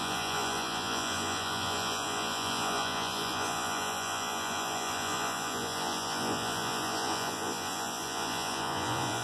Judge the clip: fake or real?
fake